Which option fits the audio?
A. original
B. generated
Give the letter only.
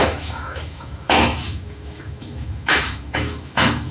B